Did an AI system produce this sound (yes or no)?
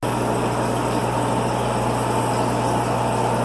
no